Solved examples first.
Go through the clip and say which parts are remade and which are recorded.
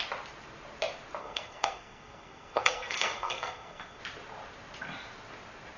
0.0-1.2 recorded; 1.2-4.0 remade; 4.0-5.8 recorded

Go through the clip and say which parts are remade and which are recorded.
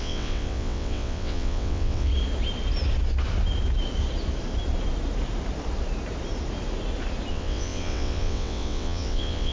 0.0-2.1 remade; 2.1-7.3 recorded; 7.3-9.5 remade